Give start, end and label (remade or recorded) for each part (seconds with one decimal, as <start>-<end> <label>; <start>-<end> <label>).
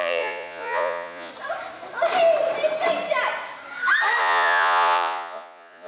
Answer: 0.0-1.3 remade; 1.3-4.2 recorded; 4.2-5.9 remade